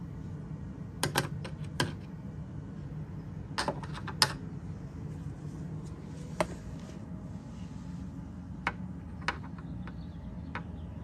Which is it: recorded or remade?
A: recorded